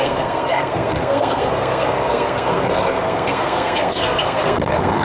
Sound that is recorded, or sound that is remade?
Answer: remade